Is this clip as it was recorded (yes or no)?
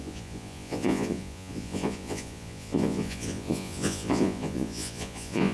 no